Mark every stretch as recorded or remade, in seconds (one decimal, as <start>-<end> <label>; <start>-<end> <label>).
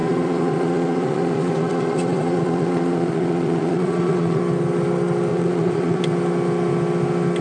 0.0-4.4 remade; 4.4-5.3 recorded; 5.3-6.0 remade; 6.0-7.4 recorded